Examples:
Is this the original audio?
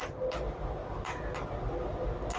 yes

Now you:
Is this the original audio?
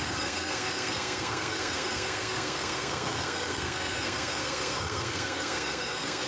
no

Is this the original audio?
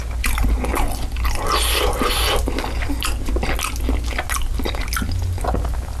yes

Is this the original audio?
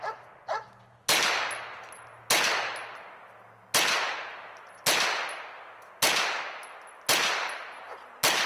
yes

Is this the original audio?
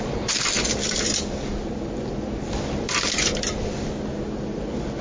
yes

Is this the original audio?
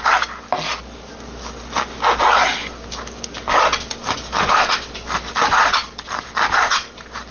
yes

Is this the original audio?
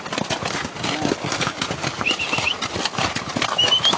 yes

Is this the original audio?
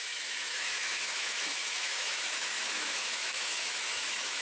no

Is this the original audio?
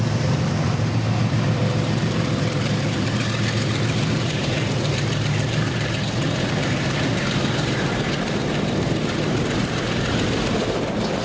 no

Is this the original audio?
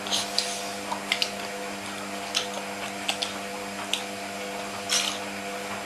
yes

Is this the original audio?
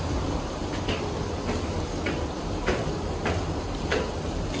no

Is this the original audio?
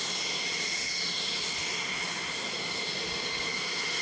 yes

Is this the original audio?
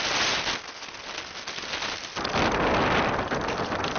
yes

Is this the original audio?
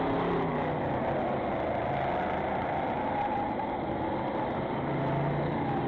yes